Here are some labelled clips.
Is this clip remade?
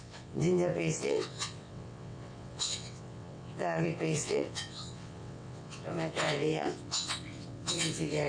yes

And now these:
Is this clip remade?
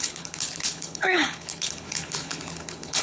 yes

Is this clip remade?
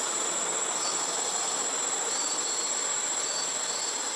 no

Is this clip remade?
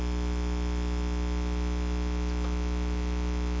no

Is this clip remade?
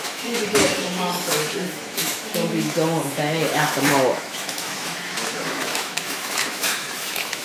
yes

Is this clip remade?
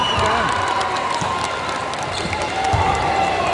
no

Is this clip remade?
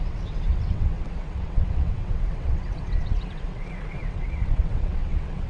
yes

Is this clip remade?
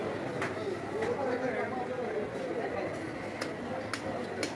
no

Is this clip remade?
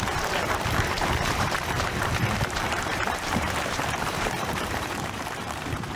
yes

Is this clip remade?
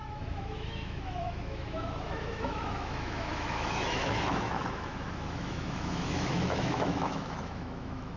yes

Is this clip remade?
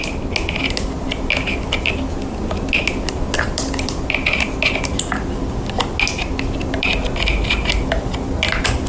no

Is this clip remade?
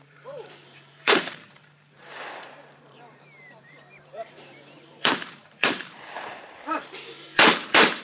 yes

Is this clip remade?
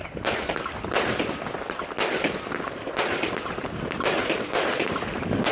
no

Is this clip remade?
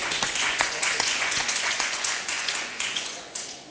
yes